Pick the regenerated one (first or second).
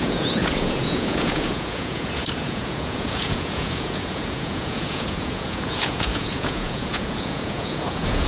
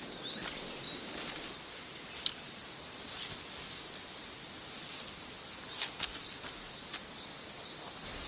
first